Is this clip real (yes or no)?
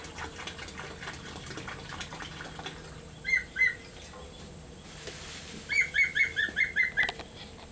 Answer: yes